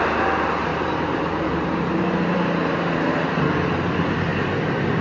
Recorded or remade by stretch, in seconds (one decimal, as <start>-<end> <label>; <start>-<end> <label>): 0.0-0.7 recorded; 0.7-3.7 remade; 3.7-5.0 recorded

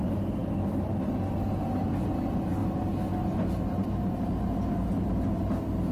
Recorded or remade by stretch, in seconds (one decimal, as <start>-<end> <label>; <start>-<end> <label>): 0.0-5.9 recorded

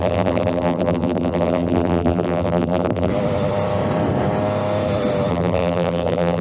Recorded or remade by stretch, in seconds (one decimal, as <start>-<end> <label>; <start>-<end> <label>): 0.0-3.1 remade; 3.1-5.3 recorded; 5.3-6.4 remade

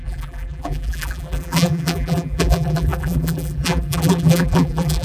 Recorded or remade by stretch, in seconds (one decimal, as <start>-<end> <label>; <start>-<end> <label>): 0.0-5.0 remade

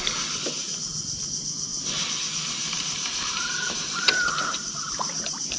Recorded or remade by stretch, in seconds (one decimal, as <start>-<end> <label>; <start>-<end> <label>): 0.0-2.6 recorded; 2.6-5.6 remade